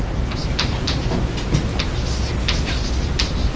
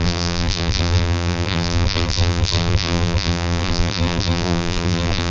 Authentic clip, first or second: first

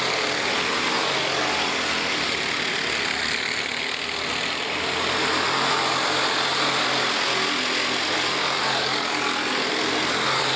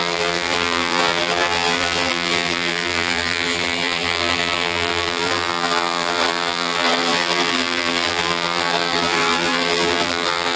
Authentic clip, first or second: first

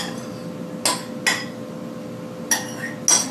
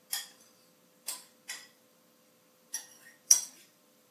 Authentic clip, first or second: first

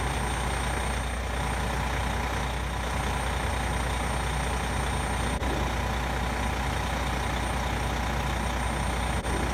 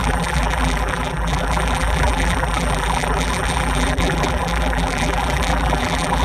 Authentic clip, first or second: first